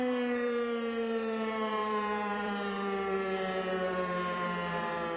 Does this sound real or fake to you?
fake